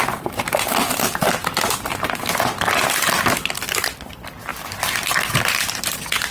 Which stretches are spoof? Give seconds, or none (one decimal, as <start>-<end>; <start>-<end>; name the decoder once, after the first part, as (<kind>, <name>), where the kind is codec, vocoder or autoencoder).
4.5-5.4 (vocoder, BigVGAN v2)